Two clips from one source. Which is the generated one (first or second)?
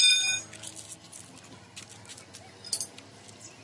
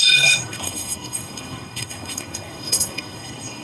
second